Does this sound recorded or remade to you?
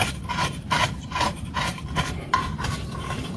remade